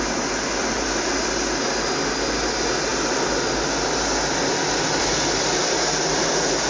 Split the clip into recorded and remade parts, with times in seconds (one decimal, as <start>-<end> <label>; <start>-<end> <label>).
0.0-6.7 recorded